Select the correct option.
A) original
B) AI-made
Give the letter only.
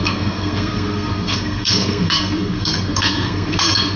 B